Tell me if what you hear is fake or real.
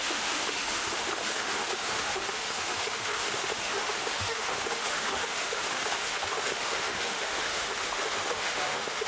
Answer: fake